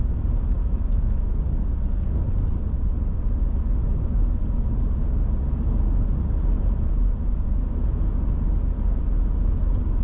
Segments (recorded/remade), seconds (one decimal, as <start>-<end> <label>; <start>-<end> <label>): 0.0-0.6 recorded; 0.6-1.4 remade; 1.4-10.0 recorded